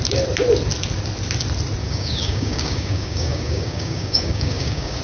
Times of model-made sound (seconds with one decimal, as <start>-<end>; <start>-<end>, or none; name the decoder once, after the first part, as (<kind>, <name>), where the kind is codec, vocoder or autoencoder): 1.8-5.0 (codec, DAC)